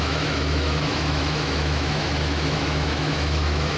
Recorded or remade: remade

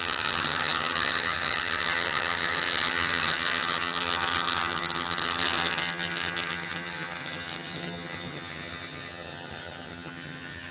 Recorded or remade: remade